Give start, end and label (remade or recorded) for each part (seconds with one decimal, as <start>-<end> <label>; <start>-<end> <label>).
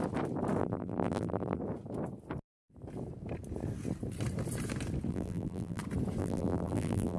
0.0-0.6 recorded; 0.6-1.6 remade; 1.6-5.1 recorded; 5.1-5.8 remade; 5.8-6.2 recorded; 6.2-7.2 remade